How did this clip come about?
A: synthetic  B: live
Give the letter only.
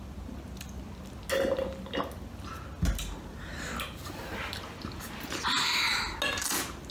B